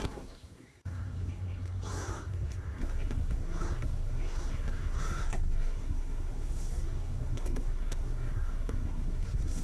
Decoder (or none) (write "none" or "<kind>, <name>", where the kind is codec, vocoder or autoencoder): codec, SNAC